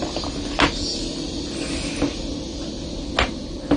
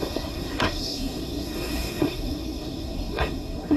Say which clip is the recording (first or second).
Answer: first